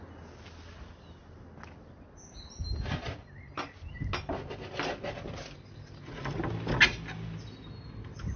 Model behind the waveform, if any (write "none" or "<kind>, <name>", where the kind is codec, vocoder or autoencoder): none